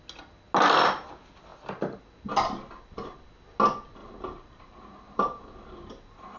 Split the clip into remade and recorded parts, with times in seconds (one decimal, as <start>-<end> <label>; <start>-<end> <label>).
0.0-4.0 recorded; 4.0-5.4 remade; 5.4-6.4 recorded